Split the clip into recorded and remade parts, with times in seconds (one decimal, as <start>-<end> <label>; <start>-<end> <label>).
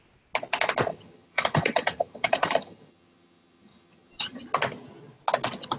0.0-0.9 recorded; 0.9-4.4 remade; 4.4-5.8 recorded